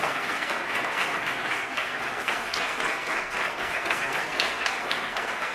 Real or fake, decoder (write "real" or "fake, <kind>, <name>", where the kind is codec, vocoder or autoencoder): fake, codec, SNAC